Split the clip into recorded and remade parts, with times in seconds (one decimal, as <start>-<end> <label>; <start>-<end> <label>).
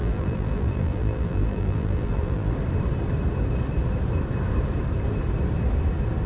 0.0-2.5 remade; 2.5-6.3 recorded